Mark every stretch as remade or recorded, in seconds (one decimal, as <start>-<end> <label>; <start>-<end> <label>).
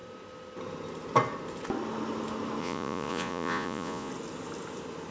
0.0-2.6 recorded; 2.6-4.1 remade; 4.1-5.1 recorded